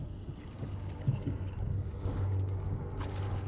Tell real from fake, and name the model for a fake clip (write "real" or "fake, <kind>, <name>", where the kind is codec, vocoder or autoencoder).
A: fake, codec, DAC